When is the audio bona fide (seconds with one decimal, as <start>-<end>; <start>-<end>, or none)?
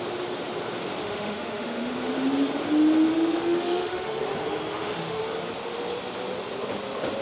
0.0-1.0; 1.9-3.1; 4.2-4.7; 5.2-7.2